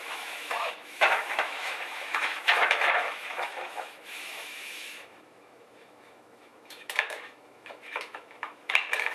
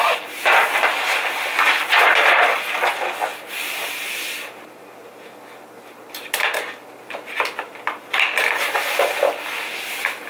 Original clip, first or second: second